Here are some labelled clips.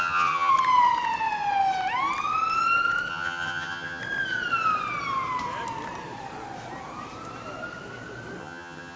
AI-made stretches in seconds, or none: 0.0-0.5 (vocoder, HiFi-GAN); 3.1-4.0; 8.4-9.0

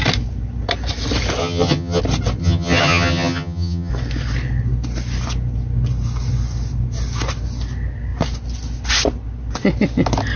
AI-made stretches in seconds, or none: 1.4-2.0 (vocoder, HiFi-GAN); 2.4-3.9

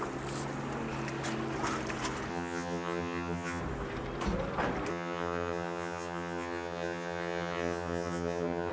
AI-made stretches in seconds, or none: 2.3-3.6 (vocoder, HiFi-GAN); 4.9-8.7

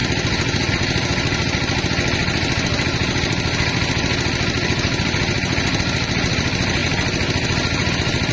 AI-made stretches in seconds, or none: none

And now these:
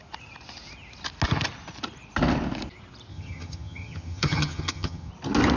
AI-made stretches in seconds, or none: 3.1-5.1 (vocoder, HiFi-GAN)

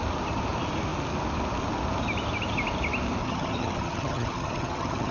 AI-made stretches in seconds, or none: 3.2-5.1 (vocoder, HiFi-GAN)

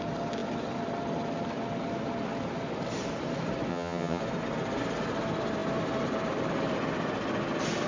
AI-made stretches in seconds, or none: 3.7-4.2 (vocoder, HiFi-GAN)